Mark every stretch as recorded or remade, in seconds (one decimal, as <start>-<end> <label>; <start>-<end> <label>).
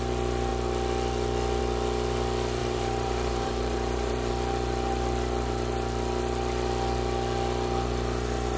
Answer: 0.0-2.6 recorded; 2.6-4.3 remade; 4.3-8.6 recorded